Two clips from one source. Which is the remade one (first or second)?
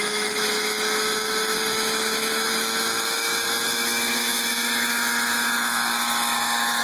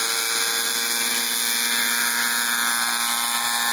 first